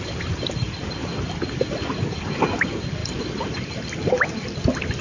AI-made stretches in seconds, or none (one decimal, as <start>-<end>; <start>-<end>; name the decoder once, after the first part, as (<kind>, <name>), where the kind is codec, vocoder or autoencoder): none